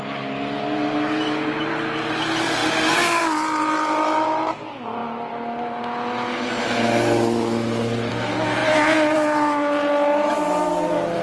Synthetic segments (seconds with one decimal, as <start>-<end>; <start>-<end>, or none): none